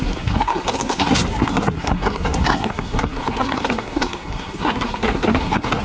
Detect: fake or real fake